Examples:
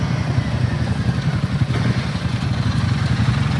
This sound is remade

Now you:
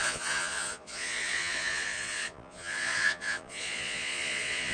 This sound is remade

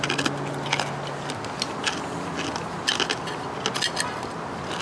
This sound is recorded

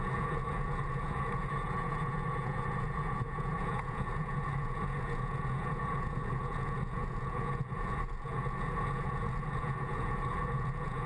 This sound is remade